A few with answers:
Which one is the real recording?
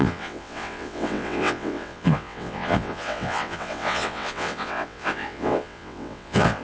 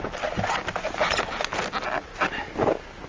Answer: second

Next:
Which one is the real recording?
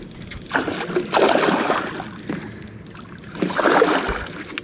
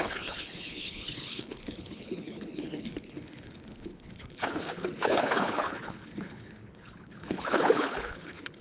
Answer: first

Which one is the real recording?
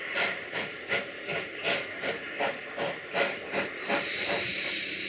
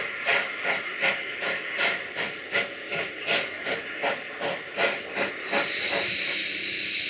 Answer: second